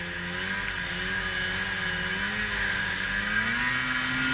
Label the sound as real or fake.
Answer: real